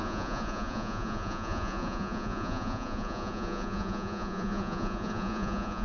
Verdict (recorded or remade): remade